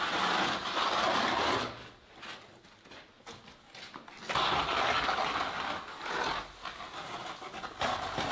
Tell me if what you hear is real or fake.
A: real